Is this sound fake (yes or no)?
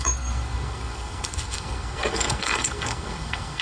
yes